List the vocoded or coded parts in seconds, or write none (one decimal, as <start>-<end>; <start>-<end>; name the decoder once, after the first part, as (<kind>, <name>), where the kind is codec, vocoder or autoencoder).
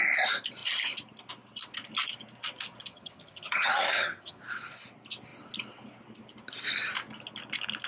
2.9-4.4 (vocoder, HiFi-GAN)